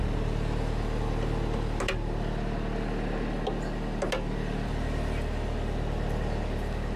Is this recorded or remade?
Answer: recorded